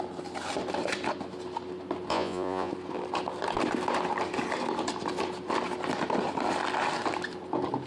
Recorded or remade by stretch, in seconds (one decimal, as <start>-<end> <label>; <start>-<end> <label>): 0.0-2.1 recorded; 2.1-2.7 remade; 2.7-7.9 recorded